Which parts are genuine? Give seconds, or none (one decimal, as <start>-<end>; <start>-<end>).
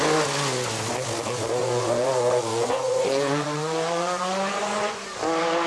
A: 0.0-1.6; 5.0-5.7